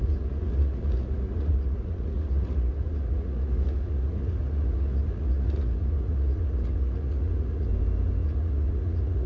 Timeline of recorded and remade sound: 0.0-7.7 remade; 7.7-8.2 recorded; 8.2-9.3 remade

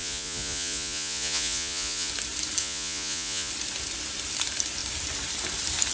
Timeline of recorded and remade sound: 0.0-2.1 remade; 2.1-2.6 recorded; 2.6-3.5 remade; 3.5-5.9 recorded

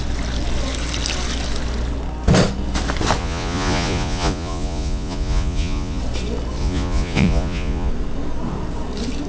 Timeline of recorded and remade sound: 0.0-3.2 recorded; 3.2-6.0 remade; 6.0-6.6 recorded; 6.6-7.9 remade; 7.9-9.3 recorded

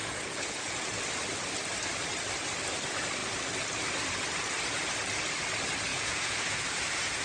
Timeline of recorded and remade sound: 0.0-1.0 remade; 1.0-5.9 recorded; 5.9-6.6 remade; 6.6-7.2 recorded

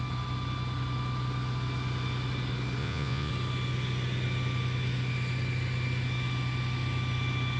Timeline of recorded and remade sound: 0.0-2.8 recorded; 2.8-3.3 remade; 3.3-7.6 recorded

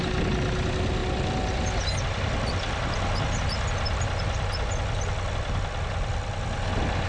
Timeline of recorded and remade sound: 0.0-7.1 recorded

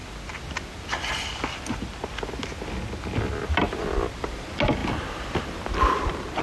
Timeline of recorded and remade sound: 0.0-6.4 recorded